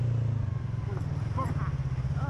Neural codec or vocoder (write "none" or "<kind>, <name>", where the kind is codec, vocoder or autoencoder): none